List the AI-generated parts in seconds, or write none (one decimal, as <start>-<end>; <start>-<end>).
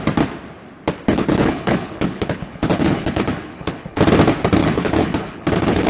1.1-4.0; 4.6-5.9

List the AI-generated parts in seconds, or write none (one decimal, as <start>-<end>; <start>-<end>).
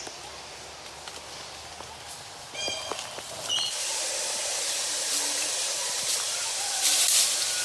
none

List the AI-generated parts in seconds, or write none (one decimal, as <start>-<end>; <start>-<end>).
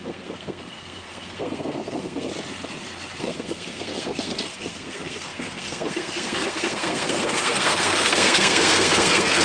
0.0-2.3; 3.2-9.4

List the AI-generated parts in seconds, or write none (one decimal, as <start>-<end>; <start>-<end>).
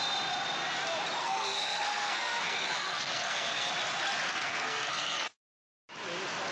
1.2-3.7; 4.3-5.7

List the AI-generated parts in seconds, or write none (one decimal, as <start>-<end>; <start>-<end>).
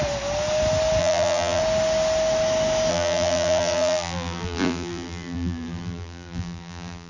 1.0-1.6; 2.9-7.1